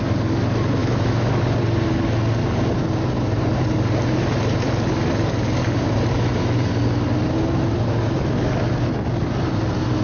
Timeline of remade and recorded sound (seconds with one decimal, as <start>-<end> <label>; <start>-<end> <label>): 0.0-0.8 recorded; 0.8-1.4 remade; 1.4-10.0 recorded